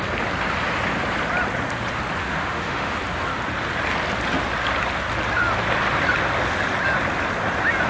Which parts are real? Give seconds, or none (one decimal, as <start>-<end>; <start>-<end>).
0.0-2.2; 3.0-7.9